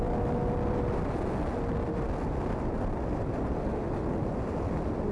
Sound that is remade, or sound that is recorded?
recorded